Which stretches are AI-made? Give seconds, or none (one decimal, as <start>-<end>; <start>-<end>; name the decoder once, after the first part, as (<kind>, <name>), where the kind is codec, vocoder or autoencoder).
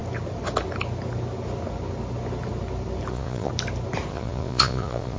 3.1-3.5 (vocoder, Vocos); 4.1-5.2